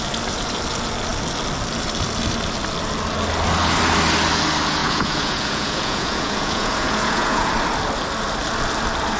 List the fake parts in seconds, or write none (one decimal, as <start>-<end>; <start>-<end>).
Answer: 4.8-7.5